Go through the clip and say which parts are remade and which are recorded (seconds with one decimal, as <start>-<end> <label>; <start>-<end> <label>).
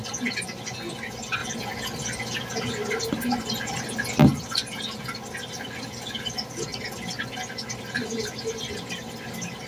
0.0-9.7 recorded